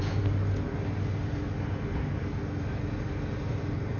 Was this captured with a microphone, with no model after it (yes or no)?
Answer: yes